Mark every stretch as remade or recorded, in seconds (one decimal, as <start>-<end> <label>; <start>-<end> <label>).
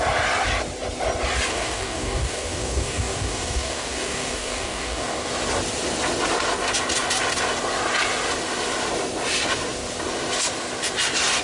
0.0-1.5 recorded; 1.5-5.3 remade; 5.3-11.4 recorded